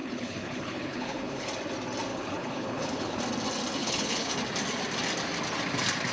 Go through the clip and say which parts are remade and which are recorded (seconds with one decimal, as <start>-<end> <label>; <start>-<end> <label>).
0.0-1.5 remade; 1.5-2.1 recorded; 2.1-3.2 remade; 3.2-3.8 recorded; 3.8-4.3 remade; 4.3-6.1 recorded